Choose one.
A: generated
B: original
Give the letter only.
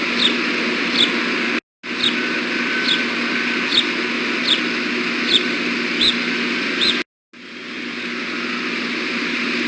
B